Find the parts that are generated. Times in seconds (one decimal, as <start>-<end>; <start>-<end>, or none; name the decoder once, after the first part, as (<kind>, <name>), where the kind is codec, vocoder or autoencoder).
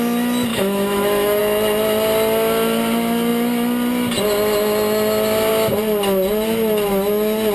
0.5-1.4 (autoencoder, DAC-VAE)